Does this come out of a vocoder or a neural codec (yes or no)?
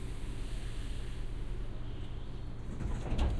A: no